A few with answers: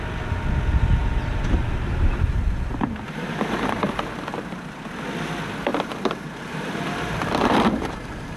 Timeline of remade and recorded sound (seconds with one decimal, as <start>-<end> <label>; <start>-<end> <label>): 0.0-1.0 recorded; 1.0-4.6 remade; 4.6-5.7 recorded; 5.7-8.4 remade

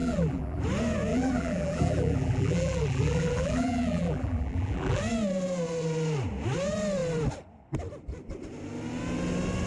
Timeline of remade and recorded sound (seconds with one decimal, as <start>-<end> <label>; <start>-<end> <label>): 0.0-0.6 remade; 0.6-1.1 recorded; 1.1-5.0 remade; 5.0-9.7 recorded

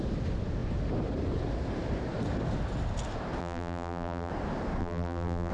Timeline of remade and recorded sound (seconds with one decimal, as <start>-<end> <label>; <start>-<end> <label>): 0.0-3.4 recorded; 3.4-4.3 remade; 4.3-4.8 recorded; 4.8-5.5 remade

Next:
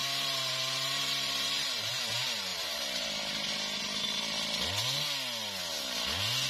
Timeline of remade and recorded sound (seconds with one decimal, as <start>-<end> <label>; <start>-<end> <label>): 0.0-1.9 remade; 1.9-2.5 recorded; 2.5-3.1 remade; 3.1-6.5 recorded

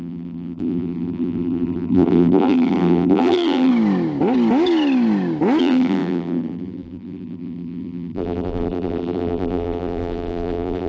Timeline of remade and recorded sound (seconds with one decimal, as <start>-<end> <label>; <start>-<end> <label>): 0.0-3.7 remade; 3.7-5.6 recorded; 5.6-10.9 remade

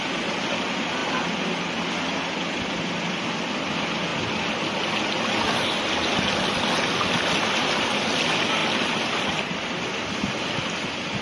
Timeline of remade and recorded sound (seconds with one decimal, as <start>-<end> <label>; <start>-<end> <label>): 0.0-11.2 recorded